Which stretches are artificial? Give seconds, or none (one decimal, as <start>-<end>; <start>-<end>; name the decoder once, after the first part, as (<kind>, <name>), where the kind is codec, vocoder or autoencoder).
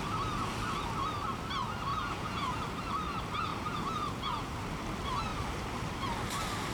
1.9-2.6 (vocoder, Vocos); 3.5-4.5